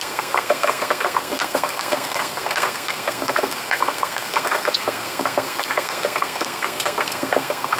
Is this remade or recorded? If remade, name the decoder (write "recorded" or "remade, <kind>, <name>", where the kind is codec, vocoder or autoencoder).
remade, codec, SNAC